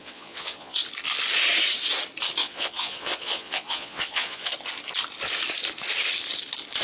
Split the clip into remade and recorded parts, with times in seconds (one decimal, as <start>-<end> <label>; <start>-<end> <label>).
0.0-0.8 remade; 0.8-2.4 recorded; 2.4-4.5 remade; 4.5-6.8 recorded